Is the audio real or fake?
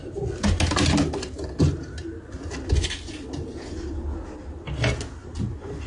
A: real